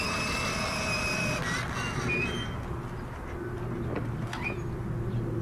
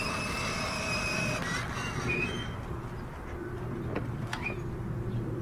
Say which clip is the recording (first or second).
first